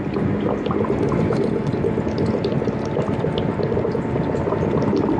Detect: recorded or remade recorded